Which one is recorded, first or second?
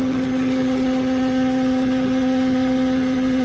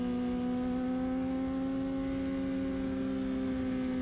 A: second